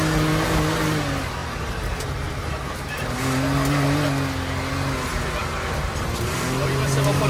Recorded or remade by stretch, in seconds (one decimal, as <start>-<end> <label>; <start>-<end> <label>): 0.0-1.4 recorded; 1.4-3.2 remade; 3.2-5.4 recorded; 5.4-7.3 remade